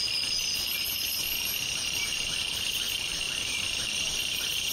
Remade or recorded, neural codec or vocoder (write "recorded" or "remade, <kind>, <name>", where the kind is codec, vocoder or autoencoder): recorded